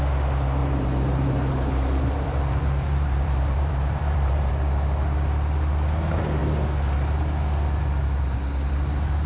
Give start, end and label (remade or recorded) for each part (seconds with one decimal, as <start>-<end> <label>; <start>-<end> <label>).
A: 0.0-0.6 recorded; 0.6-4.5 remade; 4.5-9.3 recorded